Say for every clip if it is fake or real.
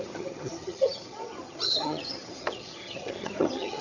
fake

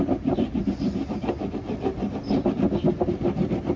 real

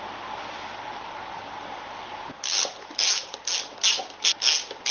real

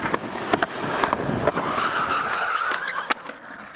real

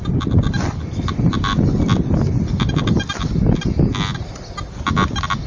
real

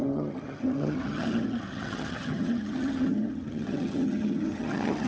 fake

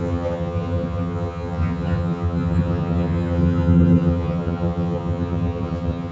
fake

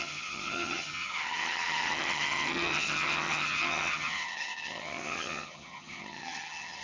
fake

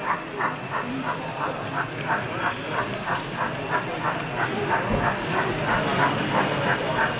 real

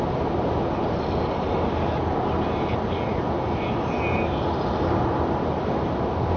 real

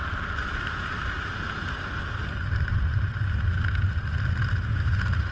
real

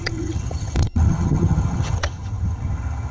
fake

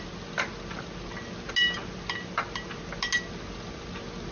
real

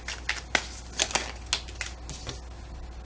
real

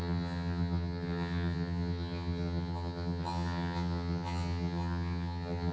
fake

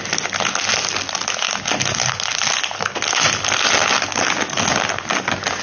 real